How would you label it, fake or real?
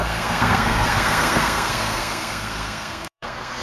fake